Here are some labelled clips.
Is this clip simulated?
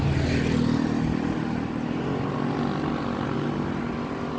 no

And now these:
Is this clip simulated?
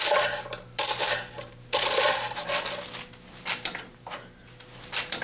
no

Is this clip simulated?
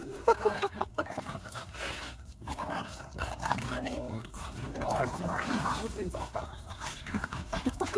yes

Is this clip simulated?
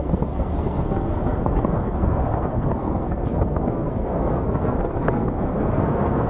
yes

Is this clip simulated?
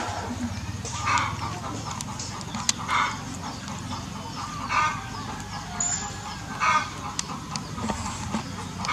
no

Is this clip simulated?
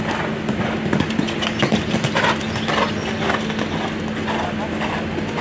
no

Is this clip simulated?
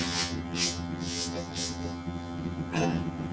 yes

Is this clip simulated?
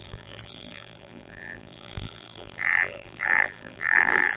yes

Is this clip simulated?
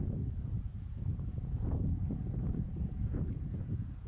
yes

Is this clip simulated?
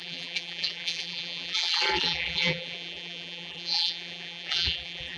yes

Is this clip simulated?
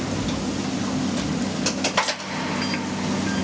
no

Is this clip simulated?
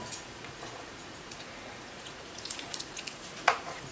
yes